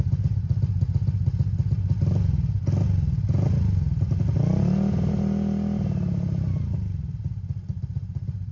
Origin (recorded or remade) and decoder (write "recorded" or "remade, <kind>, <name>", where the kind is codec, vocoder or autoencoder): recorded